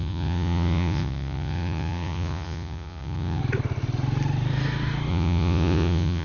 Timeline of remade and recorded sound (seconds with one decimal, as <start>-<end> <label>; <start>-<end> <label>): 0.0-3.4 remade; 3.4-5.1 recorded; 5.1-6.2 remade